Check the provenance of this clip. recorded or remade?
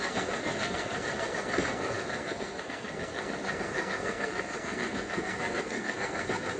remade